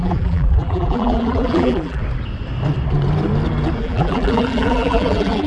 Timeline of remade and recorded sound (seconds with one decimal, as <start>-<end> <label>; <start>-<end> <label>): 0.0-2.0 remade; 2.0-3.8 recorded; 3.8-5.5 remade